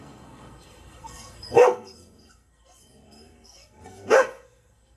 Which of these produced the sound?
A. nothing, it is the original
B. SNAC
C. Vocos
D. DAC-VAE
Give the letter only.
B